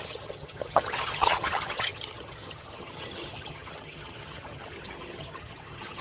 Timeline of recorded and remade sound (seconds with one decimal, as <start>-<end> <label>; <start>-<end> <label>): 0.0-6.0 remade